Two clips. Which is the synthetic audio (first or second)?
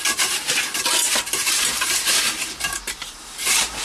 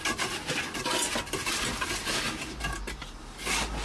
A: first